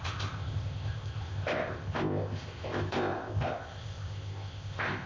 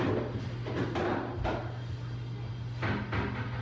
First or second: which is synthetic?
first